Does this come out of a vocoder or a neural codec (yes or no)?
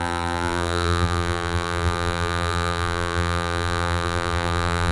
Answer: yes